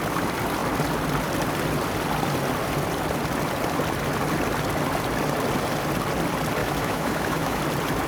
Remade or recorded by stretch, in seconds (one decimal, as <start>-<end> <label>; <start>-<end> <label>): 0.0-6.6 recorded; 6.6-7.6 remade; 7.6-8.1 recorded